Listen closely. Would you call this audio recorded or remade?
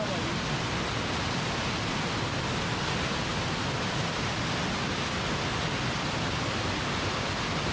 recorded